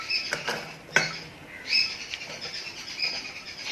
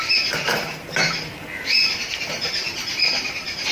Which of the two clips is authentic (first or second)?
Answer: first